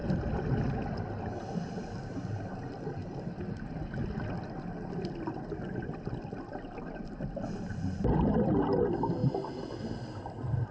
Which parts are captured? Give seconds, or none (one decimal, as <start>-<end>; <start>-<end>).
0.0-10.7